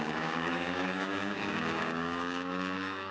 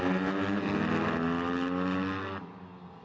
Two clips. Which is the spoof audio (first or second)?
first